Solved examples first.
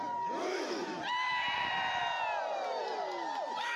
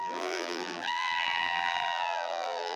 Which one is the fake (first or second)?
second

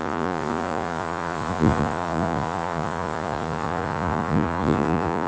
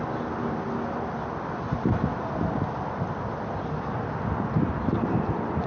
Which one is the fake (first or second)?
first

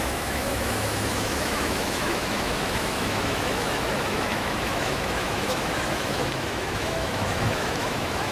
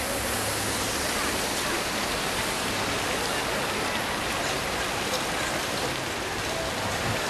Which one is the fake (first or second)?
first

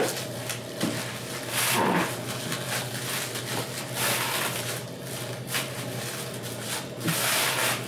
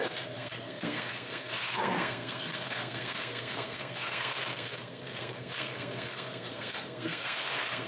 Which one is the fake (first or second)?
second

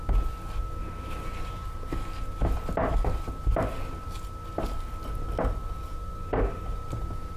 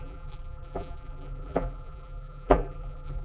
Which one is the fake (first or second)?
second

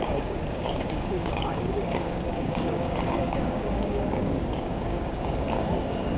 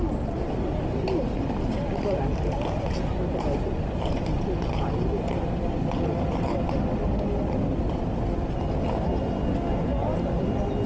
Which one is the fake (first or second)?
first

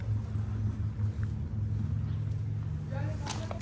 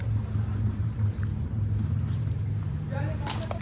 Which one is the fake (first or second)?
second